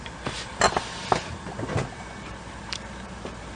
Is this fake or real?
fake